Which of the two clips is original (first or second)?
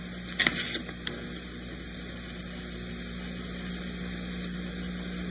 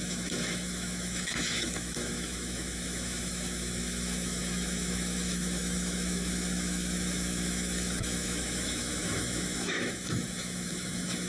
first